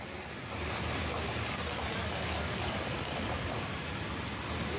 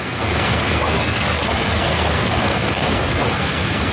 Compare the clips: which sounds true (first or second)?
first